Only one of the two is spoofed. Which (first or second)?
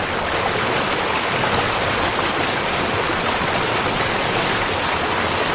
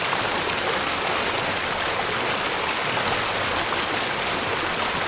first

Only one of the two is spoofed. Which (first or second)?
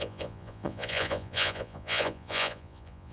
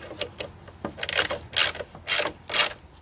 first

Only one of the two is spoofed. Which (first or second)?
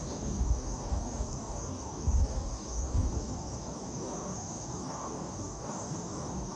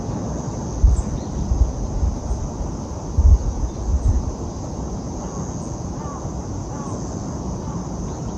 first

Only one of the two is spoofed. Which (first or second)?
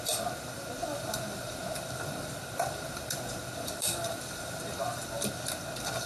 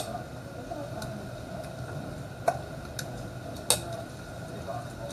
first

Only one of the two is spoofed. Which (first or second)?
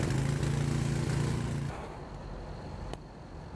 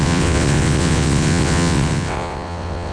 second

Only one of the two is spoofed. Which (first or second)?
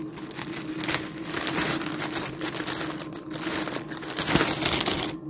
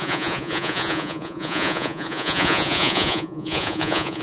second